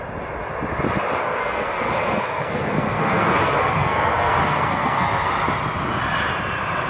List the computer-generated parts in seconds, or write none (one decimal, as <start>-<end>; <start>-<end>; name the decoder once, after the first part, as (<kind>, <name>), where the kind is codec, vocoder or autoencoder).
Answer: 1.2-5.3 (codec, SNAC)